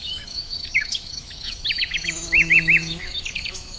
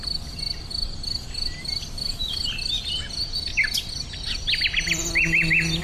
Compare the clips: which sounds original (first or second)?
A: second